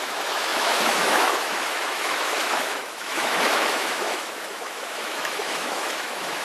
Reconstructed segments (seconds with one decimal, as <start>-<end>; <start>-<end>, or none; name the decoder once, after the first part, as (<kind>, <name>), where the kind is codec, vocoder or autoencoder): 0.0-6.4 (autoencoder, DAC-VAE)

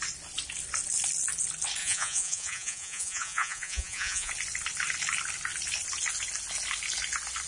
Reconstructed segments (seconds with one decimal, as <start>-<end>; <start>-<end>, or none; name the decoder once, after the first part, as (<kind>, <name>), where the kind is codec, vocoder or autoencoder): 1.8-4.3 (vocoder, Vocos)

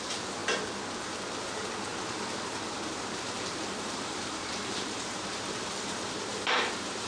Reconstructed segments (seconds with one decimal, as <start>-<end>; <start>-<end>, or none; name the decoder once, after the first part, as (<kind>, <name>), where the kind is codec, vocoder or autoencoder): 0.0-0.4 (vocoder, BigVGAN v2); 1.0-7.1